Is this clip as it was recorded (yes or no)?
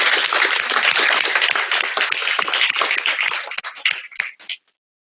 yes